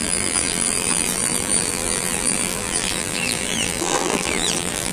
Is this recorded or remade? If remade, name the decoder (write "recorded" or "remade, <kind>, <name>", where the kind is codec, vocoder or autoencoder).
remade, vocoder, BigVGAN v2